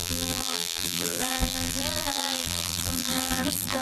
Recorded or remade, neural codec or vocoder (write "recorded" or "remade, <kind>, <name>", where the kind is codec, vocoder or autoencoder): remade, vocoder, BigVGAN v2